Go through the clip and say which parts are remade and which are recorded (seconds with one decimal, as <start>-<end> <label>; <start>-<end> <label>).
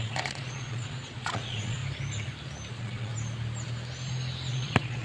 0.0-1.8 remade; 1.8-2.7 recorded; 2.7-3.1 remade; 3.1-4.5 recorded; 4.5-5.0 remade